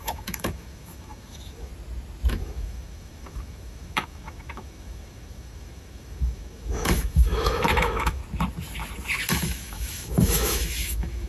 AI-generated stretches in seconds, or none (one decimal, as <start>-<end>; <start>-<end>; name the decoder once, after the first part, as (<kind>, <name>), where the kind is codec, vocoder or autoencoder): 0.0-1.7 (autoencoder, DAC-VAE); 2.3-8.2; 9.3-11.3